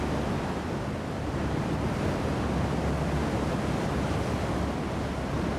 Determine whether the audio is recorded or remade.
recorded